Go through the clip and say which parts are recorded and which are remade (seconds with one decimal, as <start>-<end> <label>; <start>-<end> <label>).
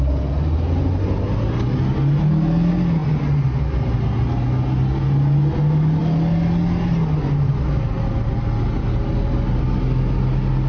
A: 0.0-10.7 recorded